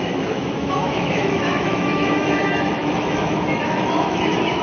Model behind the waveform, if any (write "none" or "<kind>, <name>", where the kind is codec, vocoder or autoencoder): autoencoder, DAC-VAE